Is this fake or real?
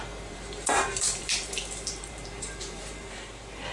fake